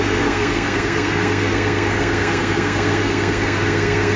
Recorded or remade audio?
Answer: remade